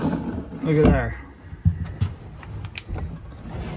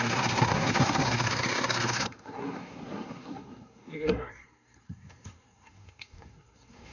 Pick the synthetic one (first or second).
second